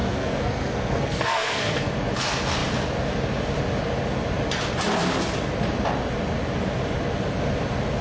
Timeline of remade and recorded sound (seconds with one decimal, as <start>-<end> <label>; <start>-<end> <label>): 0.0-1.9 remade; 1.9-8.0 recorded